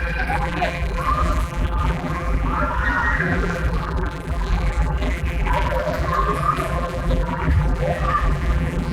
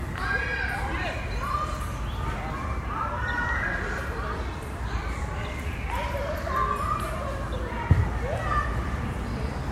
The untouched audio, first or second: second